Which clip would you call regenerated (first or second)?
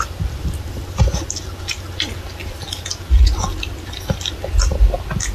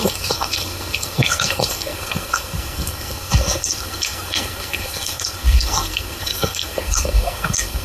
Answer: second